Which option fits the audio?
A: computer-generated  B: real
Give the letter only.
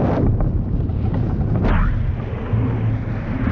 B